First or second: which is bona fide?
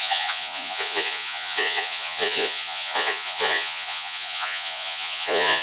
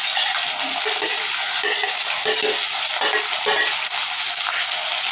second